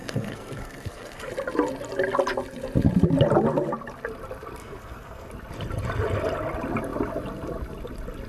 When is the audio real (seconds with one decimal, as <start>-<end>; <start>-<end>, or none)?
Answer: 1.3-4.6; 5.3-8.3